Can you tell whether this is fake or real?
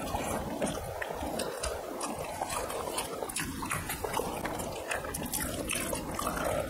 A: real